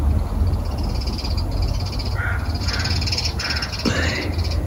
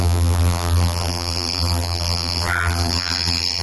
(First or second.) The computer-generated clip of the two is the second